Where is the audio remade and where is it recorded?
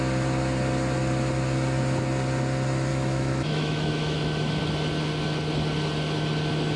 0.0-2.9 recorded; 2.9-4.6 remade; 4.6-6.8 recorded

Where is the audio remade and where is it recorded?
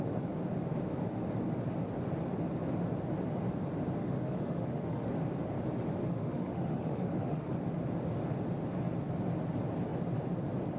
0.0-4.0 recorded; 4.0-5.1 remade; 5.1-6.0 recorded; 6.0-7.5 remade; 7.5-10.8 recorded